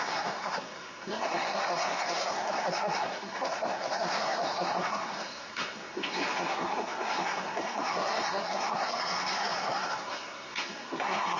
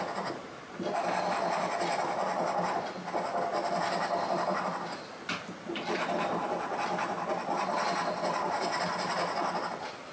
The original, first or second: second